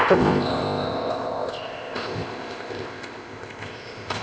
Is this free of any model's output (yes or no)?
no